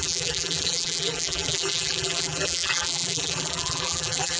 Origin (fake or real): fake